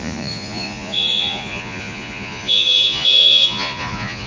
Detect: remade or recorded remade